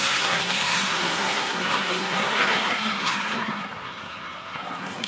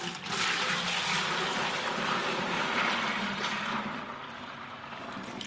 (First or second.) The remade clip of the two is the first